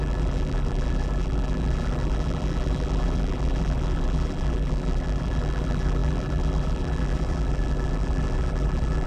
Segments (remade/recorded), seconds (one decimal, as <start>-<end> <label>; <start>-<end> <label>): 0.0-9.1 remade